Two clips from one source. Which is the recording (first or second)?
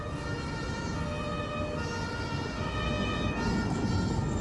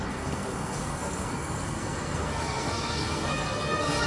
first